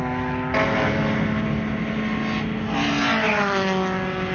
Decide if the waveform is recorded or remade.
recorded